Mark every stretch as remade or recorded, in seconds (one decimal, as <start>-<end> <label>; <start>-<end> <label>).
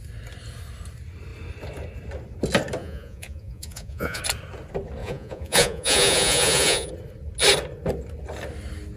0.0-2.8 recorded; 2.8-4.2 remade; 4.2-5.0 recorded; 5.0-6.9 remade; 6.9-9.0 recorded